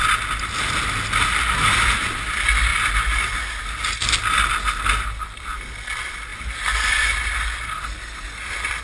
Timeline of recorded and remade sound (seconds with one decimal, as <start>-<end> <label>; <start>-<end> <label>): 0.0-8.8 recorded